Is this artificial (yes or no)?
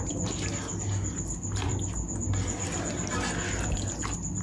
no